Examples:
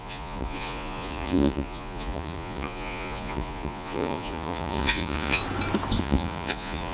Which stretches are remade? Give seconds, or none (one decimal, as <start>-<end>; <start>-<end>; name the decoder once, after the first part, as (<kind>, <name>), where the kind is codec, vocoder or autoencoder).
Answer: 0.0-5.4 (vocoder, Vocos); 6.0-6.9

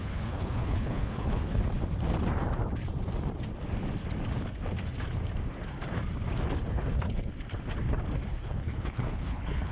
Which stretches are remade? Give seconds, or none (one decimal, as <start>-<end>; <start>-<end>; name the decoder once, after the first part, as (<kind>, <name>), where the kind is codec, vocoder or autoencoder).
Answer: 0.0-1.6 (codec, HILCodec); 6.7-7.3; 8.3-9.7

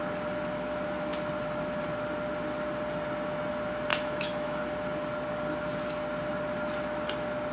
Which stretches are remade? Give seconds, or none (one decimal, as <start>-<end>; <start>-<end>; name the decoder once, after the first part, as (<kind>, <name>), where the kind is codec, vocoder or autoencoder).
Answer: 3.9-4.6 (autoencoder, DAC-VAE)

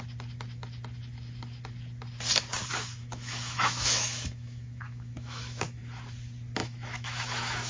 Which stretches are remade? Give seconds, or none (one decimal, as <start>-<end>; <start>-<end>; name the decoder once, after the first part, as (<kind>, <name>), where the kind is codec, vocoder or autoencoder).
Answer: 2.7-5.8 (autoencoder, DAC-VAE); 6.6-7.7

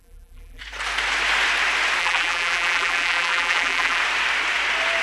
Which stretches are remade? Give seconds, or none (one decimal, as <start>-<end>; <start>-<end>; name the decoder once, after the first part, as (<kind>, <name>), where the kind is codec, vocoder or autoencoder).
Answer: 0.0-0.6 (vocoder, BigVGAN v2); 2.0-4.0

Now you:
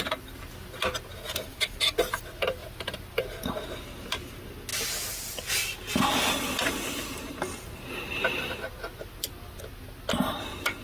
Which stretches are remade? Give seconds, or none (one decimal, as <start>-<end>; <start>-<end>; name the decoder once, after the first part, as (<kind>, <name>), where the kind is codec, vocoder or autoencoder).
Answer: 1.1-1.8 (vocoder, BigVGAN v2); 2.6-3.8

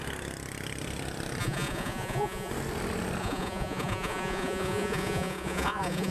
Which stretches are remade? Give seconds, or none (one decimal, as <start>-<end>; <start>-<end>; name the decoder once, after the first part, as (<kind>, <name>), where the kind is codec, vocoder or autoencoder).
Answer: 1.4-2.5 (vocoder, Vocos); 3.2-6.1

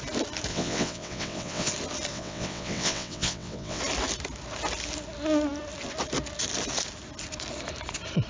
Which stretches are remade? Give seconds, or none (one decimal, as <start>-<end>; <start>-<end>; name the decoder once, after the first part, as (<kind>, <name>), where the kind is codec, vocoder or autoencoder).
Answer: 0.5-1.7 (vocoder, WaveNeXt); 2.1-3.8